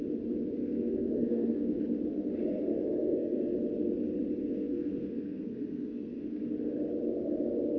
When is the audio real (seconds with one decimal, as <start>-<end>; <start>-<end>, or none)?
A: 0.0-0.6; 1.8-2.7; 3.4-4.4; 6.4-7.8